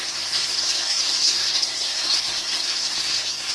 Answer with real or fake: fake